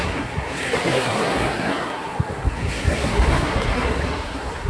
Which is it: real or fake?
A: fake